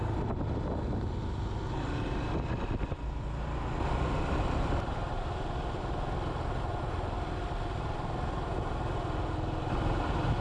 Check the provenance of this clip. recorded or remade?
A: recorded